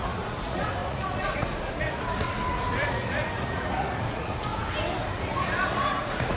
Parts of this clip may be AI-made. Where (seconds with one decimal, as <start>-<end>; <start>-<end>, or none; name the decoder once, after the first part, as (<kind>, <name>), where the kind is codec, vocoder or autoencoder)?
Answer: 0.0-4.5 (vocoder, Vocos); 5.1-6.4